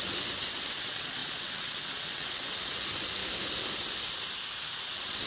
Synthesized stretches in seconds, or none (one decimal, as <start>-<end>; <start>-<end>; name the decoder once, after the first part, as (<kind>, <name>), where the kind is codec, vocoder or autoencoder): 0.0-3.2 (vocoder, WaveNeXt); 4.8-5.3